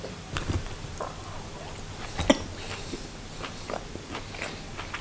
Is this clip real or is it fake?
real